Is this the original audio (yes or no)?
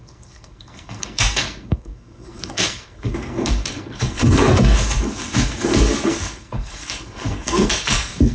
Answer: no